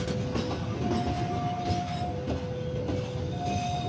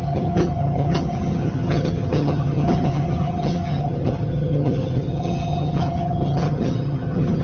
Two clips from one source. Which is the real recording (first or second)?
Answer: first